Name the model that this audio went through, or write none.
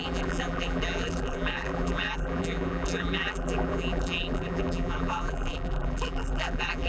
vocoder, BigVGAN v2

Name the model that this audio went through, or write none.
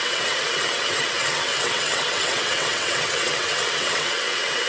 vocoder, WaveNeXt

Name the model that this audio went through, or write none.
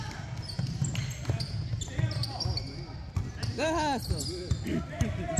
none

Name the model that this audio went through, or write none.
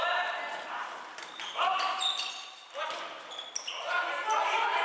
none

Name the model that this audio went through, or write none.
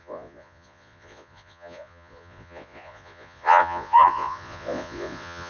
vocoder, Vocos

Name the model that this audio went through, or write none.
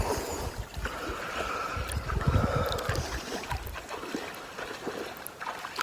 none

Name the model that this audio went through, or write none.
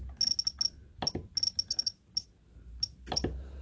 none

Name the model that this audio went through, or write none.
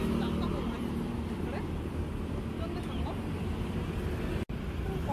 none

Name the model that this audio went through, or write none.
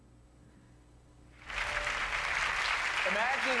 none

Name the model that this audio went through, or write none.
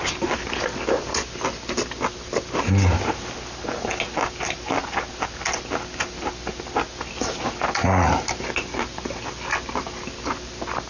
none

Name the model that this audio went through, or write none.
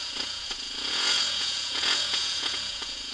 vocoder, Vocos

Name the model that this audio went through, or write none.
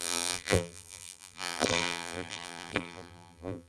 vocoder, BigVGAN v2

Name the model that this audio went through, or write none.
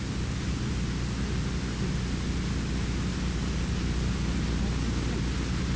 none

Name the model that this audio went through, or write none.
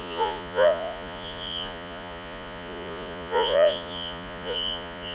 vocoder, Vocos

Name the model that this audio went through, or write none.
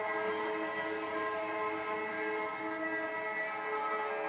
none